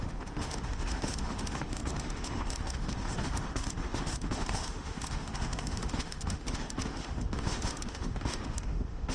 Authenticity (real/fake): fake